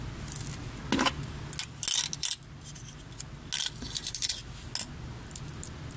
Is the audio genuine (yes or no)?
yes